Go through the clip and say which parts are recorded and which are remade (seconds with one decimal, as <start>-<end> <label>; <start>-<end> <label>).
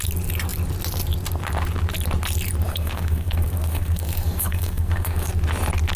0.0-2.7 recorded; 2.7-5.3 remade; 5.3-6.0 recorded